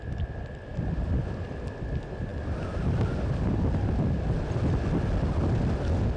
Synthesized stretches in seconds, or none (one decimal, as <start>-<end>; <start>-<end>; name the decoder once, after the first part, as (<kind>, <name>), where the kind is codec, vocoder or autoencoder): none